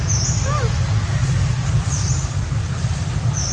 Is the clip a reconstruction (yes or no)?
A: no